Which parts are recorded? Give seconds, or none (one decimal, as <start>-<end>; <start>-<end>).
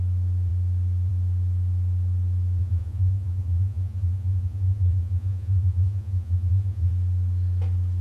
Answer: 0.0-2.6; 6.9-8.0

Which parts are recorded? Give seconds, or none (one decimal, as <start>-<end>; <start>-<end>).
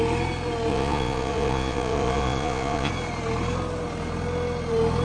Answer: 0.0-0.7; 2.9-5.0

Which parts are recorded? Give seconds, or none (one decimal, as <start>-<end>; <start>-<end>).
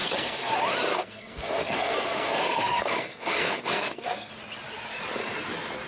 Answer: 0.5-0.9; 4.3-5.9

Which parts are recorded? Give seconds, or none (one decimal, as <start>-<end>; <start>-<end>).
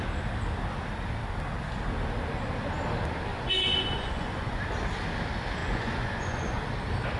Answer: 0.0-3.3; 4.6-5.6; 6.6-7.2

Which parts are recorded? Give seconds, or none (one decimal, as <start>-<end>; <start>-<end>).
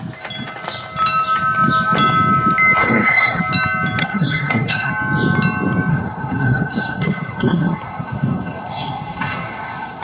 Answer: 0.0-2.8; 3.4-4.0; 4.9-5.9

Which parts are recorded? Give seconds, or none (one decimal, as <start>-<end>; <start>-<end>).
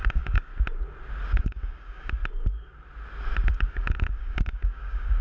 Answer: 0.5-1.4; 2.2-3.5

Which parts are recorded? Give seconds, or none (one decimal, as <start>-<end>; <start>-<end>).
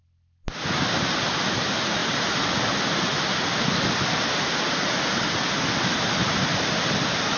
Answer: 0.0-7.4